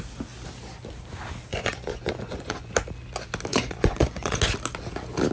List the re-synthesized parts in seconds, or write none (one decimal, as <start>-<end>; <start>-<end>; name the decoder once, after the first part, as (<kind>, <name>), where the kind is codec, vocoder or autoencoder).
1.5-2.7 (vocoder, Vocos); 3.5-4.4